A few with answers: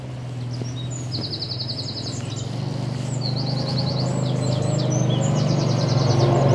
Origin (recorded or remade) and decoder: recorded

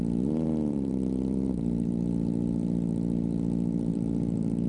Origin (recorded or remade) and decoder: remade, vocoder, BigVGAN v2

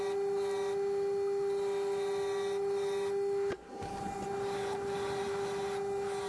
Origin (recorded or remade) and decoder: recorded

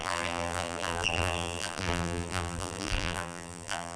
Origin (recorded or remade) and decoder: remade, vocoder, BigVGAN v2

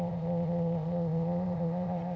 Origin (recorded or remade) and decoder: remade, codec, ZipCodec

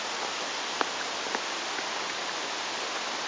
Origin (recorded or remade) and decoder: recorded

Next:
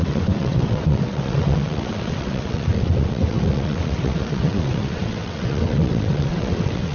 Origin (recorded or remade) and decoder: remade, vocoder, WaveNeXt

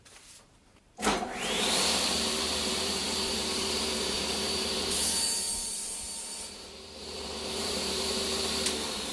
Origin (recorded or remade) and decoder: remade, vocoder, BigVGAN v2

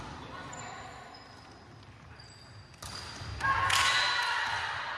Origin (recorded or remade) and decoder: recorded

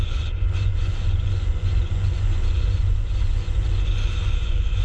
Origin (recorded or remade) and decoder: remade, vocoder, Vocos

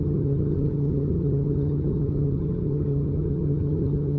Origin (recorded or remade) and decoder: remade, vocoder, HiFi-GAN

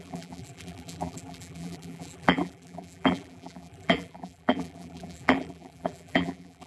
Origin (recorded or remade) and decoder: remade, vocoder, BigVGAN v2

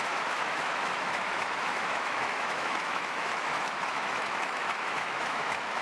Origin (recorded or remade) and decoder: remade, autoencoder, DAC-VAE